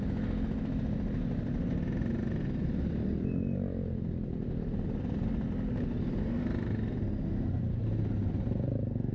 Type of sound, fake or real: real